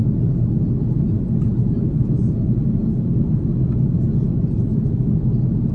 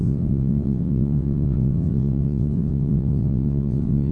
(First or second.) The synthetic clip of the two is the second